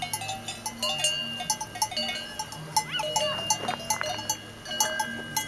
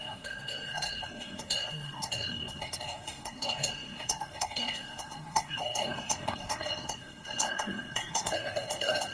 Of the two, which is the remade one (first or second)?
second